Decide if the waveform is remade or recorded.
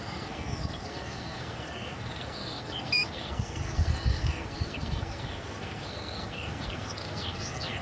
remade